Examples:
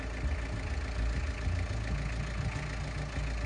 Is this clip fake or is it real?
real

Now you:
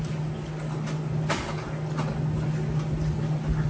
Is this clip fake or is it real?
real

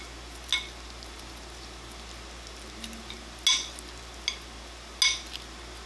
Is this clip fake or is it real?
real